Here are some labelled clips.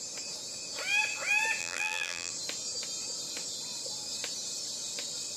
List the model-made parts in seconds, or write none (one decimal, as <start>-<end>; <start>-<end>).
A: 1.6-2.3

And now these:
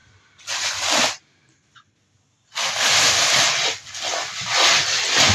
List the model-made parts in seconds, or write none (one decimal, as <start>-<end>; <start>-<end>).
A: none

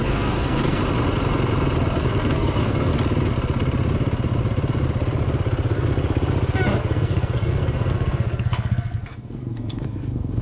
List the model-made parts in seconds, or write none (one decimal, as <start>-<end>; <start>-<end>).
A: 0.0-0.8; 2.0-2.9; 6.8-10.4

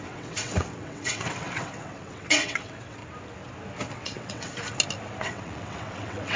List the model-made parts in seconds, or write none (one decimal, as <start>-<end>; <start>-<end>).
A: 0.0-3.0; 3.9-4.5; 5.2-6.4

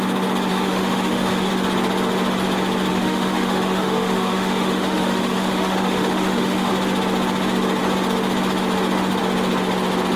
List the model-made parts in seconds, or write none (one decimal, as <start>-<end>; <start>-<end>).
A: 0.5-1.5; 2.9-6.7